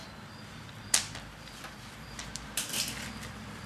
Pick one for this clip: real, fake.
fake